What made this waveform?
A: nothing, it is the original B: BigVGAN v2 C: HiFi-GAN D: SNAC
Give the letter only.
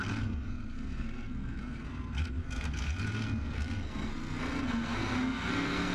D